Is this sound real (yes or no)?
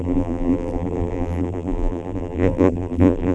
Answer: no